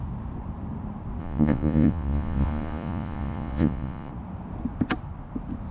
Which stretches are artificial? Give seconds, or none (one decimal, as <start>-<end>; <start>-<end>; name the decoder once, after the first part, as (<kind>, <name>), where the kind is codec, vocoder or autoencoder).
1.2-4.1 (vocoder, Vocos)